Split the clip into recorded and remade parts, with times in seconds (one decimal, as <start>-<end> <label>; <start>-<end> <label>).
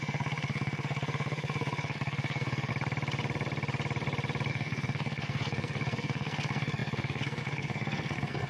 0.0-2.7 remade; 2.7-4.5 recorded; 4.5-8.5 remade